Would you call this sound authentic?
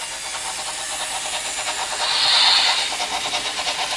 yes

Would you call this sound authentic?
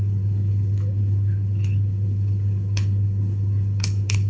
no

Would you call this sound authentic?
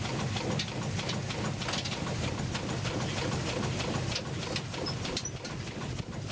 yes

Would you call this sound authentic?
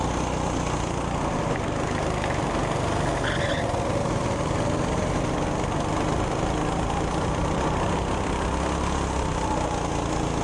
yes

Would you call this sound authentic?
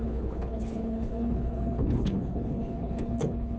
no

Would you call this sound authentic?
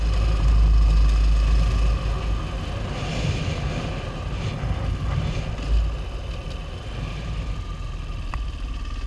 yes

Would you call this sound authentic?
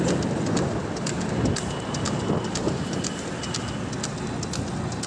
yes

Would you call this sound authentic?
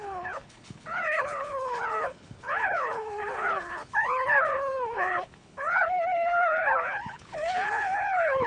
no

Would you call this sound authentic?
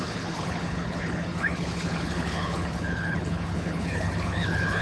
no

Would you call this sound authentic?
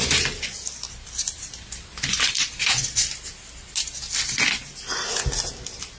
yes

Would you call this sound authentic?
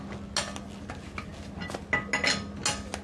yes